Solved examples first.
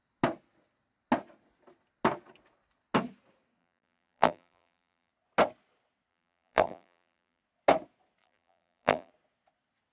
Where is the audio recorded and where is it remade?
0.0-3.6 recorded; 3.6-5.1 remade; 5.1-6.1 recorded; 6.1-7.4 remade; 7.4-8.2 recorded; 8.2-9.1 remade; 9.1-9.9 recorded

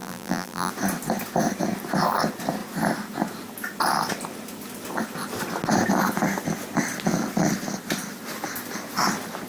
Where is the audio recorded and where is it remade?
0.0-0.7 remade; 0.7-9.5 recorded

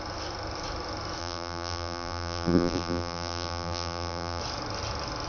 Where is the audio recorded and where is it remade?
0.0-1.2 recorded; 1.2-4.4 remade; 4.4-5.3 recorded